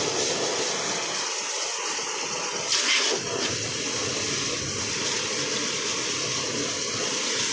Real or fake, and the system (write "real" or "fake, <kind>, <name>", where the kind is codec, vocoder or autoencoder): real